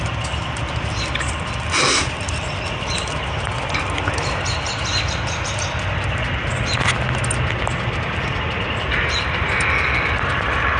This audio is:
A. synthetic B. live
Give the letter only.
B